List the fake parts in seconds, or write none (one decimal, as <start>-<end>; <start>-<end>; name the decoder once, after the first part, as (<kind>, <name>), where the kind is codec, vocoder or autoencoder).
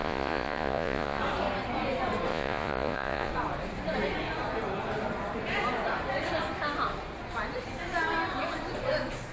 0.0-1.2 (vocoder, Vocos); 2.3-3.3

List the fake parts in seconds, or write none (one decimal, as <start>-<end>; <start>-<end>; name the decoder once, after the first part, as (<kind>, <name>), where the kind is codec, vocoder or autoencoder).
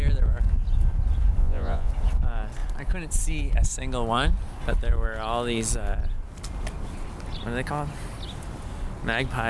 1.4-1.9 (vocoder, Vocos)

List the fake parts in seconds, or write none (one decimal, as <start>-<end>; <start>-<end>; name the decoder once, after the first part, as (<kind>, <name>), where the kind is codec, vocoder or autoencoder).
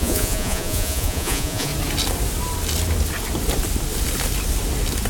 0.0-1.7 (vocoder, Vocos)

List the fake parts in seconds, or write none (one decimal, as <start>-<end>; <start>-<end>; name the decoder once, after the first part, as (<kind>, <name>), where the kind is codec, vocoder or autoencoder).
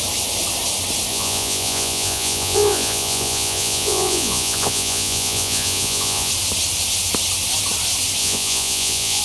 1.1-6.3 (vocoder, Vocos); 8.2-9.2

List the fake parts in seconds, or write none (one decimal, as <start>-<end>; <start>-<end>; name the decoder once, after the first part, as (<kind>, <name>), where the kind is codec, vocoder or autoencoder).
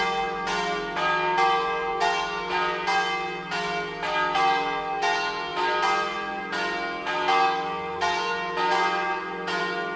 none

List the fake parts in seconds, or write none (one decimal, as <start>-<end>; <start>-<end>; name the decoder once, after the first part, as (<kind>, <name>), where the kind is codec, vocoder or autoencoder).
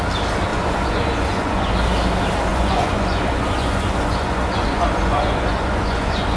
0.5-1.7 (vocoder, Vocos); 2.5-6.4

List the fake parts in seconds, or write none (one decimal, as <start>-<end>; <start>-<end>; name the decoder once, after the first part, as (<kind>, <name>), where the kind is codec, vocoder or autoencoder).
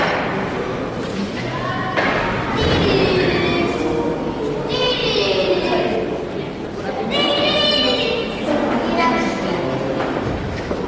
1.2-1.7 (vocoder, Vocos)